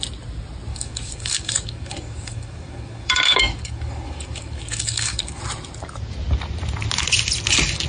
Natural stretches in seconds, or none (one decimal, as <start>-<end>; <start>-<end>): 0.0-0.7; 5.4-7.9